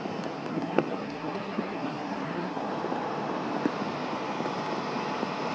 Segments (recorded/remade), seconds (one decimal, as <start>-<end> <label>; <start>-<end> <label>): 0.0-0.5 recorded; 0.5-2.7 remade; 2.7-5.5 recorded